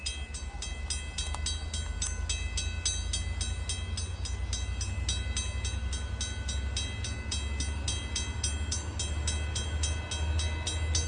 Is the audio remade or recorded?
recorded